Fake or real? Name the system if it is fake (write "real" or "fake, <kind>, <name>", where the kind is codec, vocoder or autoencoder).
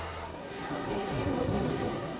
fake, codec, SNAC